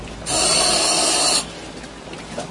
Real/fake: real